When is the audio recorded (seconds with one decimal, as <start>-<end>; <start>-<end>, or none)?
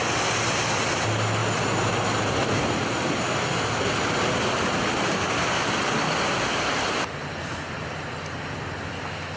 0.0-9.4